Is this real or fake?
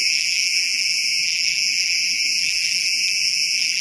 fake